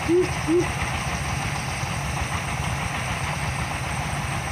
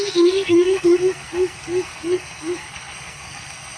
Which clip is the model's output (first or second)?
second